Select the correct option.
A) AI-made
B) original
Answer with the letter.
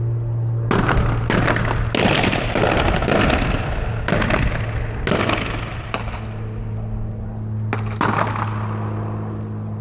B